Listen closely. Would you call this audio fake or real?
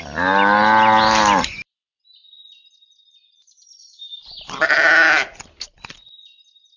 real